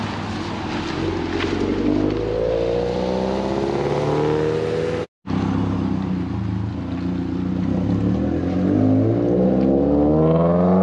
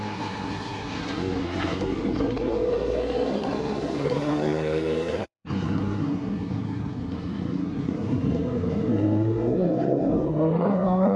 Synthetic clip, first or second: second